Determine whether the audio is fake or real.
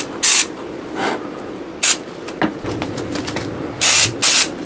real